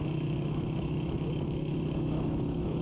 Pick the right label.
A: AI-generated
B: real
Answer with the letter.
A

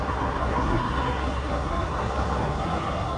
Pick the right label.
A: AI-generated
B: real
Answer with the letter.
A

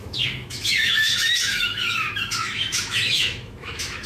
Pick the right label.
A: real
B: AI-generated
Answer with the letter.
B